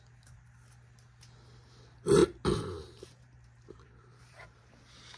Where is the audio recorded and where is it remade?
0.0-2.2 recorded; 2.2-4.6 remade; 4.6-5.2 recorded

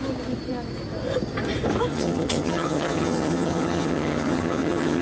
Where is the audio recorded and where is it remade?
0.0-1.9 recorded; 1.9-5.0 remade

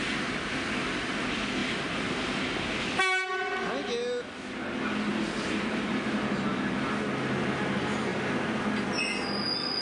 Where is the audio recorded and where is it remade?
0.0-1.6 recorded; 1.6-2.4 remade; 2.4-5.1 recorded; 5.1-5.9 remade; 5.9-9.8 recorded

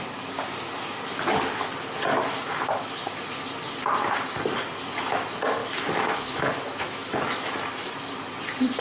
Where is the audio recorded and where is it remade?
0.0-2.1 recorded; 2.1-3.2 remade; 3.2-5.6 recorded; 5.6-7.7 remade; 7.7-8.8 recorded

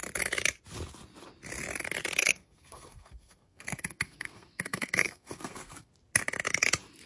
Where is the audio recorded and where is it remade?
0.0-2.2 recorded; 2.2-5.9 remade; 5.9-7.1 recorded